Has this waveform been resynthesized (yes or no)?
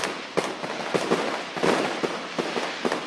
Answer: no